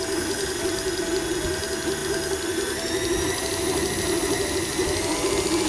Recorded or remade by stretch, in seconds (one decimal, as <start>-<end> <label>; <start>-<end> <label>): 0.0-5.7 recorded